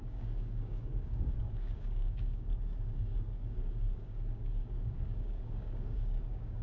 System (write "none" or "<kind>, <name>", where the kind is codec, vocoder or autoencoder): codec, DAC